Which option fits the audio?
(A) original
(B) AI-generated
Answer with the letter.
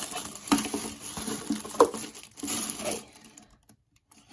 A